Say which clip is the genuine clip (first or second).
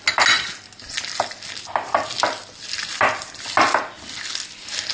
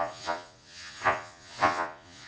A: first